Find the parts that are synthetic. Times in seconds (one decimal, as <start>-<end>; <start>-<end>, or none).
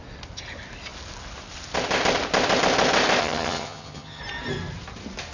3.2-4.2